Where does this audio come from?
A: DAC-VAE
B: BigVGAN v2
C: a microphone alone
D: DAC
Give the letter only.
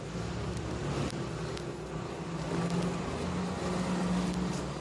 C